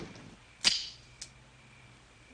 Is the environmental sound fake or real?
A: real